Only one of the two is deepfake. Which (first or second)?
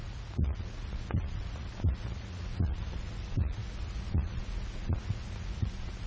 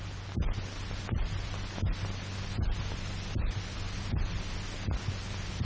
first